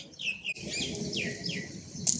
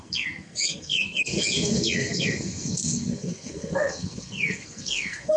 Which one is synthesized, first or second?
second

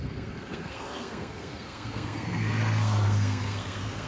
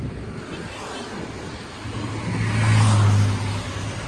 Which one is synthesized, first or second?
first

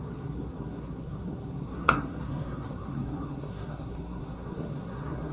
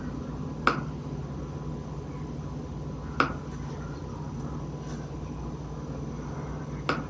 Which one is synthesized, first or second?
first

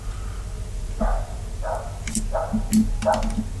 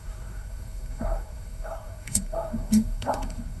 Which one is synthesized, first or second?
second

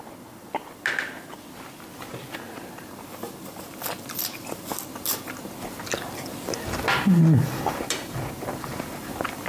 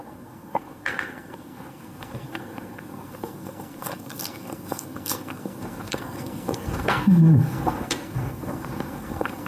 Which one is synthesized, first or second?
second